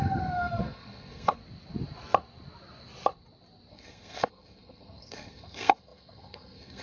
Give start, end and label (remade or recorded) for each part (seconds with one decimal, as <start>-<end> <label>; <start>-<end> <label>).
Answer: 0.0-1.4 remade; 1.4-3.7 recorded; 3.7-6.8 remade